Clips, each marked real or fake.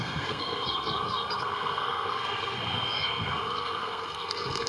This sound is fake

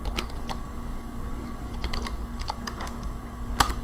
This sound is fake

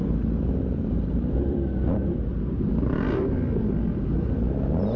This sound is real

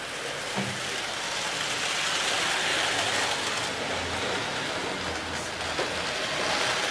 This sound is real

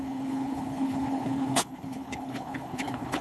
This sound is fake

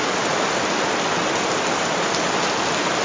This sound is real